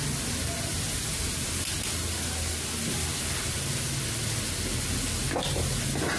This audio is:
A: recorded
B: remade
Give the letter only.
A